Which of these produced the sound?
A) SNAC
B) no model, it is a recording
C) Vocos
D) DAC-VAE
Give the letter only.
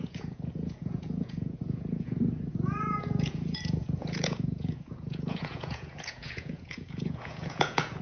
C